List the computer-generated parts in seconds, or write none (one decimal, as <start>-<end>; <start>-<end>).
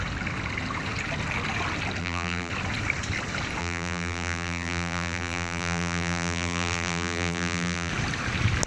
2.0-2.5; 3.6-7.9